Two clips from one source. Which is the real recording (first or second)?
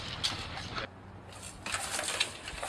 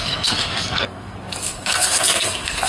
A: first